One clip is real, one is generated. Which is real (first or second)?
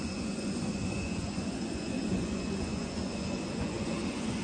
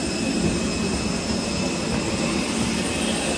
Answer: second